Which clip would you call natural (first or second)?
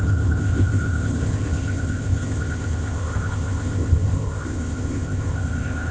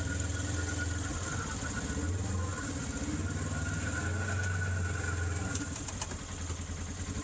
second